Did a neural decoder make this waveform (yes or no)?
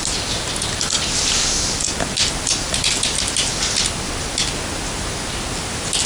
no